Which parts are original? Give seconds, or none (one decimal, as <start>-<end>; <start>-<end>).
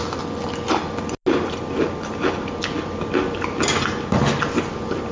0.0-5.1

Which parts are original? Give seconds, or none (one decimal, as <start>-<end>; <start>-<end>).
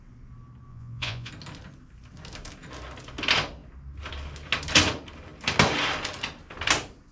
0.0-0.7; 1.3-7.1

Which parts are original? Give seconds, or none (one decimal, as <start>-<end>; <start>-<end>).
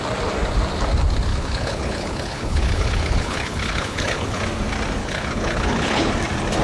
0.0-1.3; 4.4-5.0; 6.1-6.6